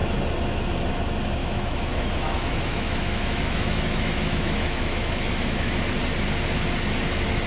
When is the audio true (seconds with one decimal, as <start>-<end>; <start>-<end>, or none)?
0.0-1.4; 5.9-7.5